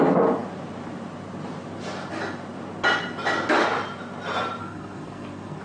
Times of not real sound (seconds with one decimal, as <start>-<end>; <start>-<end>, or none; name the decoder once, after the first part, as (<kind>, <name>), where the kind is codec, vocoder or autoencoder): 4.6-5.6 (codec, SNAC)